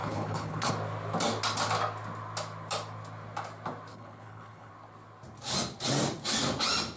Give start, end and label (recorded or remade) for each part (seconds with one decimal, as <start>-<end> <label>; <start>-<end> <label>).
0.0-0.7 remade; 0.7-3.9 recorded; 3.9-4.7 remade; 4.7-7.0 recorded